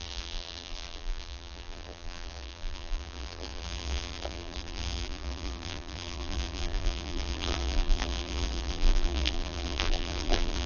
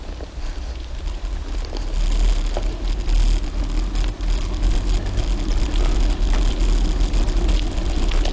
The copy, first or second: first